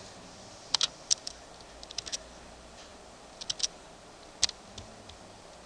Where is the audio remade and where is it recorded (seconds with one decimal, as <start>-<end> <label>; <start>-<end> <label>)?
0.0-5.7 recorded